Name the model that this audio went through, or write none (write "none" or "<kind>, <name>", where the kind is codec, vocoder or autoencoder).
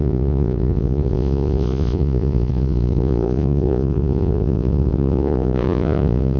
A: vocoder, Vocos